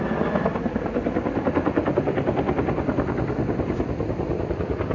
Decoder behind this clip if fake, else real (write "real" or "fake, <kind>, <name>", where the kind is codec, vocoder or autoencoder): real